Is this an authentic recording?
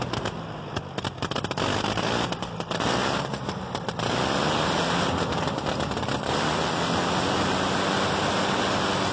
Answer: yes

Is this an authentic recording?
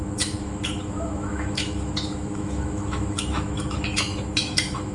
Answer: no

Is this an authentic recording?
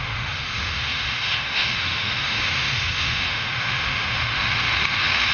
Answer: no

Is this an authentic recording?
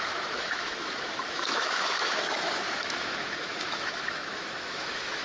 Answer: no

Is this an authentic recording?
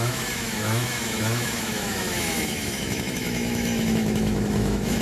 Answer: no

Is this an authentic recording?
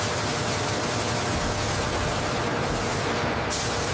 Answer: yes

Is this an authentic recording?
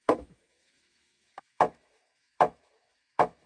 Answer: no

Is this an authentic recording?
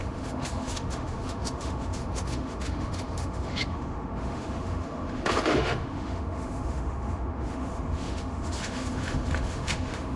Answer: no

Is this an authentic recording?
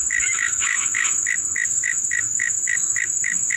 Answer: no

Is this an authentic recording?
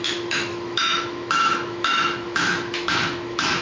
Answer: no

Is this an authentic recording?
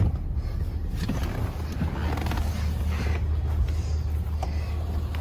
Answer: yes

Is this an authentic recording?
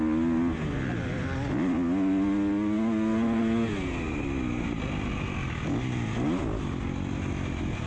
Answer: yes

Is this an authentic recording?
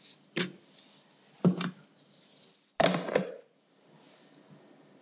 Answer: yes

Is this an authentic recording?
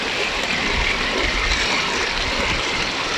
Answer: yes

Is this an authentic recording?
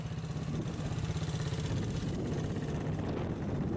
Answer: yes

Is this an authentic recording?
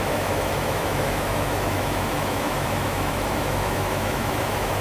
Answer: no